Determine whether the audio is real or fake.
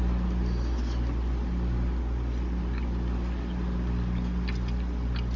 real